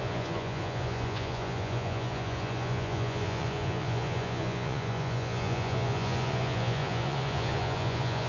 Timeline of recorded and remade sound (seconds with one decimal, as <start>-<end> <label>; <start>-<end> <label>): 0.0-8.3 remade